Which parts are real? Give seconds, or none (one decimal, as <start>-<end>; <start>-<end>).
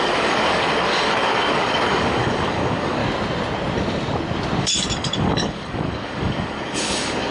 3.0-4.6